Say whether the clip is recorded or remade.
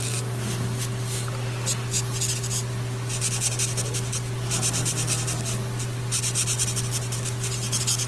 recorded